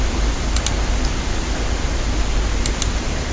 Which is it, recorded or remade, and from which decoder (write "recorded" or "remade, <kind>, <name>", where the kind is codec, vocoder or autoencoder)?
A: recorded